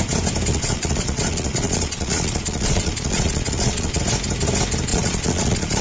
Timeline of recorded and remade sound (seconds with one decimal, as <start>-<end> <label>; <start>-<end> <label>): 0.0-0.5 recorded; 0.5-4.0 remade; 4.0-4.9 recorded; 4.9-5.8 remade